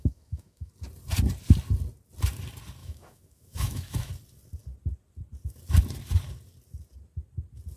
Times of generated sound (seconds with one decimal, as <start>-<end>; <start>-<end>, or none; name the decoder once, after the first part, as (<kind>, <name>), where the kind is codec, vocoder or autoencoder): 0.0-0.7 (autoencoder, DAC-VAE); 2.8-4.1